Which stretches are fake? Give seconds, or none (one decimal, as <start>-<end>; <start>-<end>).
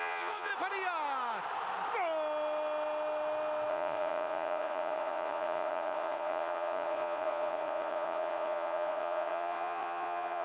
0.0-0.5; 3.7-10.4